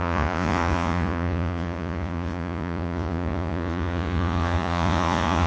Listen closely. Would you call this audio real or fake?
fake